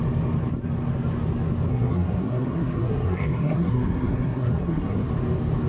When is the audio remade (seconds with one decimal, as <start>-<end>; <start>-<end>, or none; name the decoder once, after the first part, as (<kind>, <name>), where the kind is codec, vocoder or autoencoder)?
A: 1.7-5.1 (codec, SNAC)